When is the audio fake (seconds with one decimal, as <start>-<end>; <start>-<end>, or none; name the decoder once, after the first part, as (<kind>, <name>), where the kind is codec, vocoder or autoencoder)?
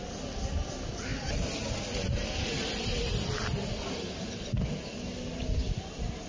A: none